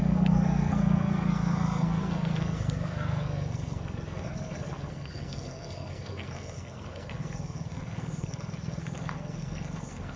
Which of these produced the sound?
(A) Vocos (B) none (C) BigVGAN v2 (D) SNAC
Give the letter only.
D